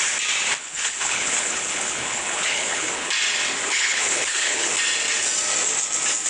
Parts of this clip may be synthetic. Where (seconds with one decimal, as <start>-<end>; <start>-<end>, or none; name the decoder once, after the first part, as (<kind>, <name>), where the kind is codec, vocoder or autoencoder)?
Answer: 0.6-3.1 (codec, HILCodec); 3.7-4.7